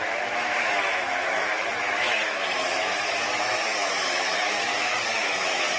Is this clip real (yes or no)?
no